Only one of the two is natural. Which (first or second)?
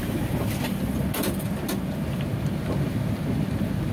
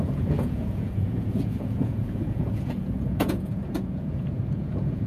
first